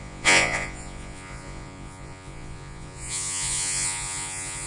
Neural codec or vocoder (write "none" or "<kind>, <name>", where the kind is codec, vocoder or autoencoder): vocoder, Vocos